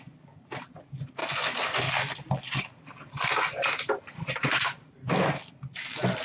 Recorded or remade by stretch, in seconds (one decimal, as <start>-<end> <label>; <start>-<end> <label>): 0.0-1.2 recorded; 1.2-1.8 remade; 1.8-6.2 recorded